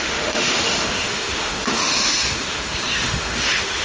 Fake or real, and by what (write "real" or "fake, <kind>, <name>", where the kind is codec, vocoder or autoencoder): fake, autoencoder, DAC-VAE